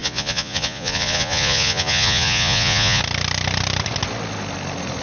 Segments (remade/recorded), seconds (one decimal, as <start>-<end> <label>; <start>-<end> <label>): 0.0-3.0 remade; 3.0-5.0 recorded